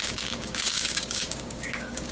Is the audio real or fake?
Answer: fake